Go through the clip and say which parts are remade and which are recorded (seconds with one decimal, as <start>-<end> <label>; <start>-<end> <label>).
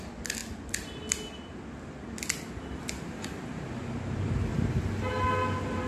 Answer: 0.0-2.8 recorded; 2.8-3.5 remade; 3.5-5.9 recorded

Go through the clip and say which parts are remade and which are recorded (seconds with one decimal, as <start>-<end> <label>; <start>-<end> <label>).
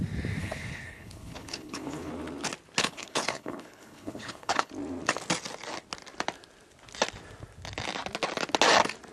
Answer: 0.0-0.4 recorded; 0.4-2.1 remade; 2.1-2.8 recorded; 2.8-4.7 remade; 4.7-9.1 recorded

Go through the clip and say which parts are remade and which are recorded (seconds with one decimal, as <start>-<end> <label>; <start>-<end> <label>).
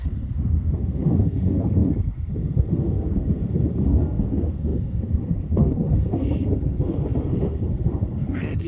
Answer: 0.0-8.7 remade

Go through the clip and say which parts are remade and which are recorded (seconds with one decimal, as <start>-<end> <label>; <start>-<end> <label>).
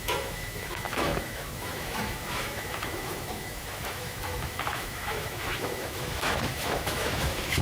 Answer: 0.0-7.6 remade